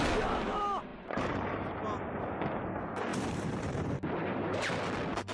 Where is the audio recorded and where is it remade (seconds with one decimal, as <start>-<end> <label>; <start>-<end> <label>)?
0.0-0.9 recorded; 0.9-1.8 remade; 1.8-3.1 recorded; 3.1-4.8 remade; 4.8-5.3 recorded